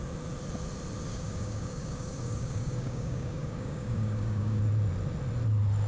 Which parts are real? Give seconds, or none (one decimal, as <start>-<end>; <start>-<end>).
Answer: 0.0-1.1; 4.6-5.9